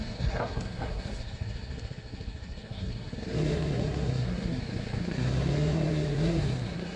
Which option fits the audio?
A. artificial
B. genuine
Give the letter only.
A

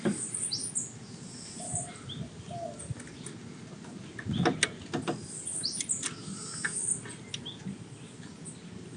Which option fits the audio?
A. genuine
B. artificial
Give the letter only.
A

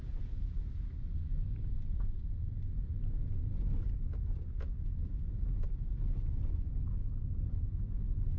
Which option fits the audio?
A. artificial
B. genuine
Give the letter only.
B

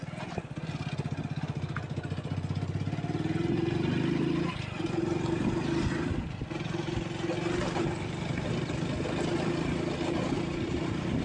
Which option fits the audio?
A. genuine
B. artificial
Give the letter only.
A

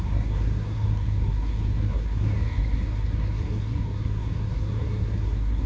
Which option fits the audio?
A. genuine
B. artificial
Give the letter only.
B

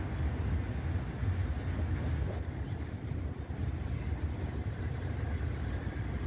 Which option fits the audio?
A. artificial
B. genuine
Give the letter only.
B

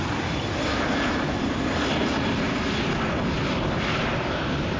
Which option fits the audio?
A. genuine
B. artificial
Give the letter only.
A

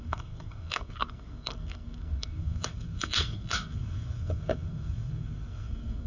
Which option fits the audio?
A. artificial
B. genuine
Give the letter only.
A